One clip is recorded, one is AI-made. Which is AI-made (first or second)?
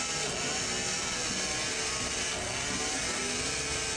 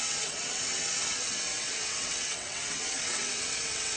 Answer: second